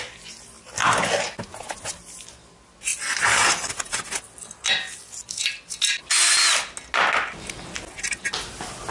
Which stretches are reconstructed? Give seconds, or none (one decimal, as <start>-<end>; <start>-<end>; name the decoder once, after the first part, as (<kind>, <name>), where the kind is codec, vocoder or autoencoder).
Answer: none